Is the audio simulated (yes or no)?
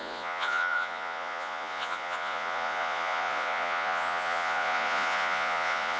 yes